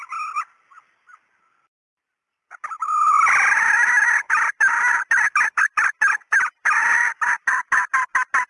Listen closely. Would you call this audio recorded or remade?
recorded